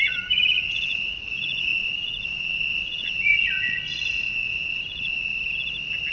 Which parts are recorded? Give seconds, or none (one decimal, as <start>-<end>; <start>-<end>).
5.3-6.1